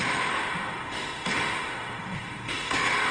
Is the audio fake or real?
fake